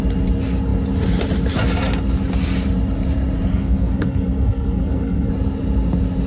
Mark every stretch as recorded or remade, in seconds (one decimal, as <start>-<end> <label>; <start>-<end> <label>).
0.0-3.5 recorded; 3.5-5.3 remade; 5.3-6.3 recorded